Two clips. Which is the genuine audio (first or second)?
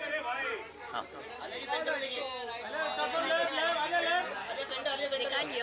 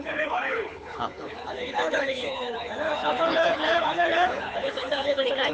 first